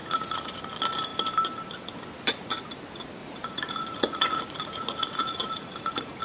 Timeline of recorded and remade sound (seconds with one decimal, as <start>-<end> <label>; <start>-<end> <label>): 0.0-0.6 remade; 0.6-3.2 recorded; 3.2-6.2 remade